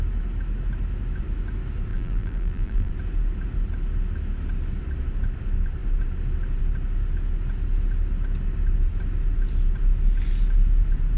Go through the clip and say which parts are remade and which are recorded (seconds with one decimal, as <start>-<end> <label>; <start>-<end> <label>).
0.0-1.9 recorded; 1.9-2.9 remade; 2.9-11.2 recorded